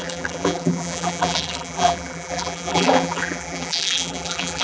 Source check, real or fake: fake